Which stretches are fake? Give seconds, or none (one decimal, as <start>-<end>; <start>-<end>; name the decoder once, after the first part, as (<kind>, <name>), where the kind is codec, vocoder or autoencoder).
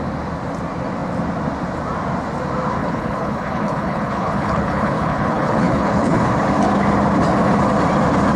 2.8-6.3 (codec, HILCodec)